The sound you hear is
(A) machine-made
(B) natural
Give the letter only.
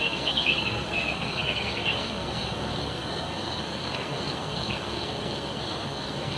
A